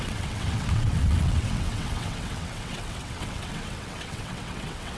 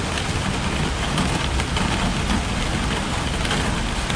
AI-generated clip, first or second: first